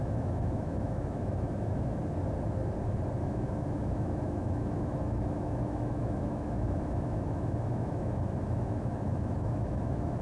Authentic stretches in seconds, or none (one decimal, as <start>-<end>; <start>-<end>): 2.0-3.2